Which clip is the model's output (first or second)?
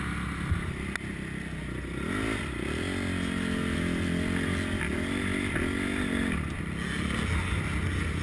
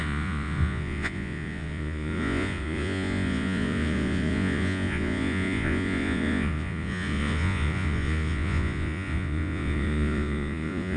second